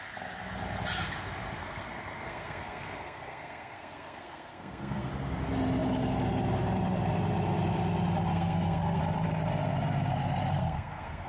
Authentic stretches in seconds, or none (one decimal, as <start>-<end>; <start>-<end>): 0.0-1.6; 5.1-8.3; 9.0-10.6